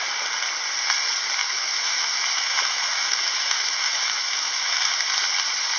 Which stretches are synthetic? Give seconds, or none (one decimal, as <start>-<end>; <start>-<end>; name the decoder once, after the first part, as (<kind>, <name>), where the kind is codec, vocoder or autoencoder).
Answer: 1.4-4.9 (autoencoder, DAC-VAE)